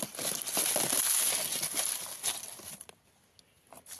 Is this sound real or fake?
real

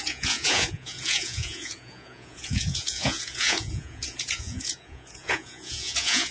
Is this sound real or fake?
fake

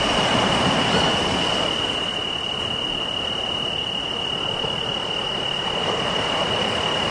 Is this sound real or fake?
real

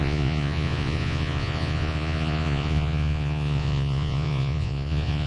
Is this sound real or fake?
fake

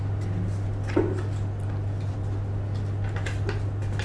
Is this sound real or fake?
real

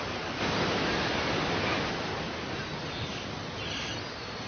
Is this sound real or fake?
real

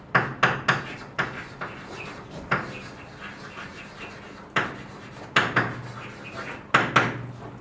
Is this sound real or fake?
real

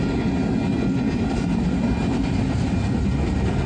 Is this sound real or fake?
real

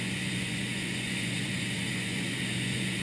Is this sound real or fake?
fake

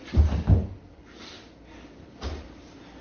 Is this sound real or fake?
real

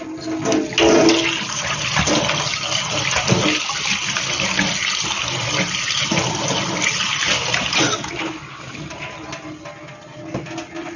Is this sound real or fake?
real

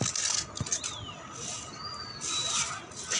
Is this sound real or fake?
real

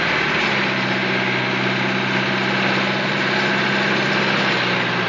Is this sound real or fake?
real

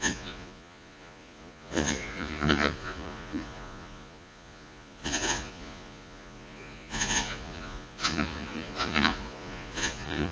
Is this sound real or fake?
fake